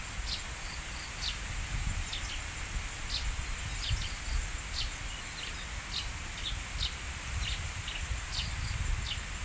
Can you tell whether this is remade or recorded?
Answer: recorded